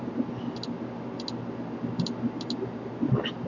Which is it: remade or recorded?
recorded